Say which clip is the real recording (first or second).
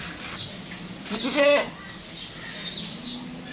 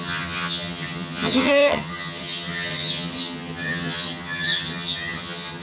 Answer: first